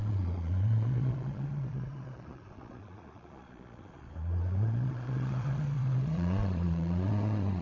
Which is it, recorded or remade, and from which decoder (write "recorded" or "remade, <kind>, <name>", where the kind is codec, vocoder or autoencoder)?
remade, vocoder, Vocos